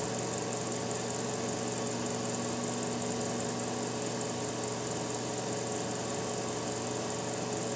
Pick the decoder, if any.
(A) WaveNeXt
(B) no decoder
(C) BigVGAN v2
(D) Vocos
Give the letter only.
B